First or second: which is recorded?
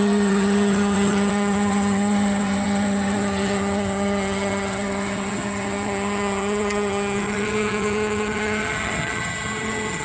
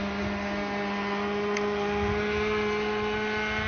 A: second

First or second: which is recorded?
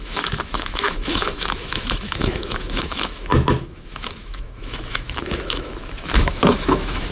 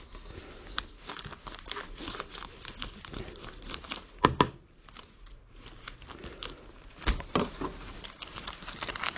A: second